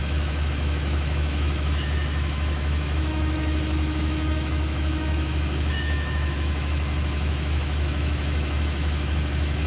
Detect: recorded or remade remade